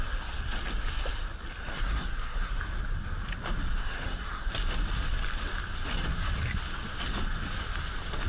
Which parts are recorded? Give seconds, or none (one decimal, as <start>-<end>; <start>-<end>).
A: 0.0-1.6; 2.5-3.8; 4.5-8.3